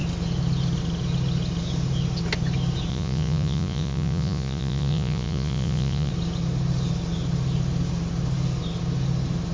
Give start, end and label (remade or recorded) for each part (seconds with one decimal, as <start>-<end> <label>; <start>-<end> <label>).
0.0-2.9 recorded; 2.9-6.1 remade; 6.1-9.5 recorded